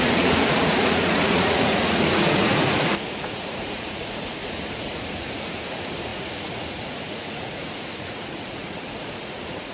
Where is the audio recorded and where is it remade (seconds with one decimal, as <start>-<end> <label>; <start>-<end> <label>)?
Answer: 0.0-9.7 remade